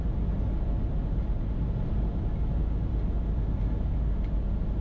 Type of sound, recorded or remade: recorded